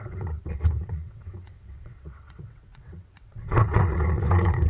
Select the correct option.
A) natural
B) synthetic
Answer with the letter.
B